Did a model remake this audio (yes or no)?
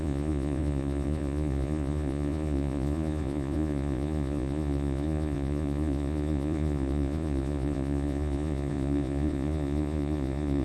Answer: yes